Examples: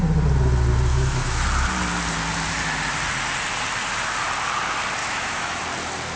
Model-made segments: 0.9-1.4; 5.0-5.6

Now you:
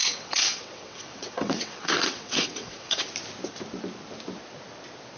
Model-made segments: 0.0-3.1

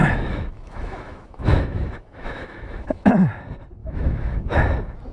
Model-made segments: 0.0-3.1; 3.8-4.6

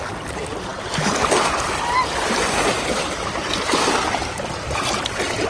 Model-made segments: none